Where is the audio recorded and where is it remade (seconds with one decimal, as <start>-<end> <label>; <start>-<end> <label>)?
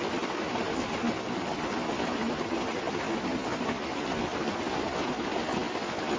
0.0-6.2 recorded